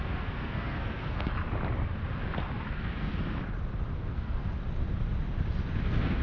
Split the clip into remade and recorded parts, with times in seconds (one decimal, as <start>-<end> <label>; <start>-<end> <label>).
0.0-1.3 remade; 1.3-2.7 recorded; 2.7-3.1 remade; 3.1-4.0 recorded; 4.0-4.6 remade; 4.6-5.8 recorded; 5.8-6.2 remade